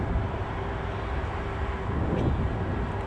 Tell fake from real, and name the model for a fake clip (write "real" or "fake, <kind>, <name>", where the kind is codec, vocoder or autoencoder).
real